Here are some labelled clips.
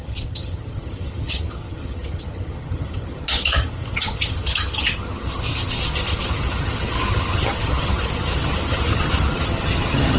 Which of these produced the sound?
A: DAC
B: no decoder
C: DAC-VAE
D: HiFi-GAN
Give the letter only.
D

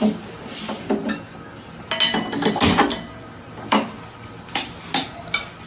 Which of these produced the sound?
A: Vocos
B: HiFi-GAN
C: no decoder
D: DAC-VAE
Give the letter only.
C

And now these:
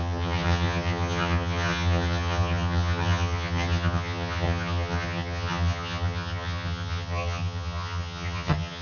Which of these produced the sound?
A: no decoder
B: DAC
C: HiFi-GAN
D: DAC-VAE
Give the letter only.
C